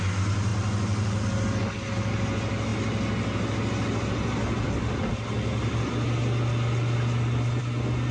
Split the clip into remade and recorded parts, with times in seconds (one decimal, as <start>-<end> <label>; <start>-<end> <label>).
0.0-8.1 recorded